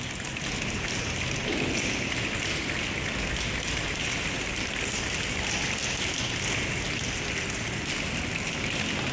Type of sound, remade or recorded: recorded